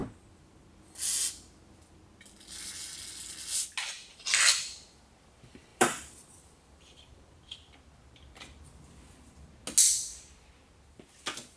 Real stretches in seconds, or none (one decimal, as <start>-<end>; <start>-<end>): 0.0-5.7; 8.0-11.6